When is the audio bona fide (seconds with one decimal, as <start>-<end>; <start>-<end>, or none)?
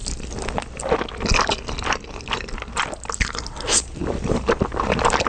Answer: 0.0-5.3